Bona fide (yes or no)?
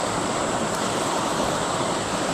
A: yes